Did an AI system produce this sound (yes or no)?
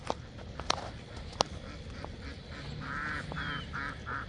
no